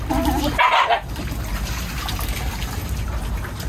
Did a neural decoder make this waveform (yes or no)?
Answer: no